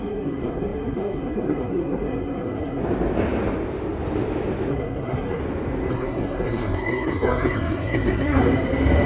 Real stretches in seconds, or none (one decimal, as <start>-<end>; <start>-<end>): 2.8-4.7; 5.4-5.9; 8.4-9.1